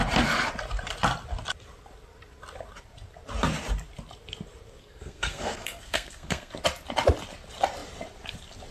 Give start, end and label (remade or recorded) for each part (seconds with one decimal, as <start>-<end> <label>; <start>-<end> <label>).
0.0-4.8 recorded; 4.8-6.5 remade; 6.5-8.7 recorded